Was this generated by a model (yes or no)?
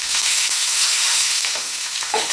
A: yes